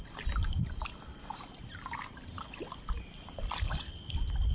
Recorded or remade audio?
recorded